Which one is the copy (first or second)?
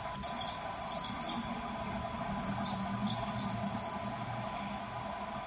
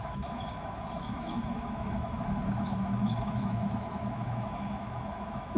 second